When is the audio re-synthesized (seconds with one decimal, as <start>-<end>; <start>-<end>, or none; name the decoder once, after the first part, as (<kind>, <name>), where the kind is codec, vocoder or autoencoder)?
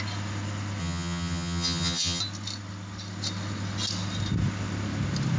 0.8-2.2 (vocoder, HiFi-GAN)